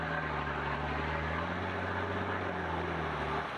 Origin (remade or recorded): recorded